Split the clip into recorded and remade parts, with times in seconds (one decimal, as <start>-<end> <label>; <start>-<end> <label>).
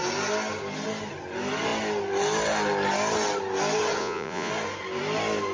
0.0-4.0 recorded; 4.0-4.5 remade; 4.5-5.5 recorded